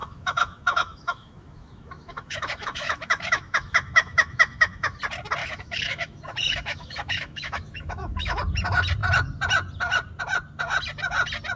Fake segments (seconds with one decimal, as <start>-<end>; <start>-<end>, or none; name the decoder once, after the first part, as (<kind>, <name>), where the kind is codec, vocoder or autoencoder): 0.0-5.0 (autoencoder, DAC-VAE); 5.4-8.4